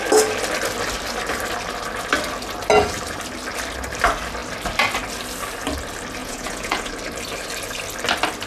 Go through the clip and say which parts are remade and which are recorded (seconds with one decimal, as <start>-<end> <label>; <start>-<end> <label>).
0.0-6.2 recorded; 6.2-6.9 remade; 6.9-8.5 recorded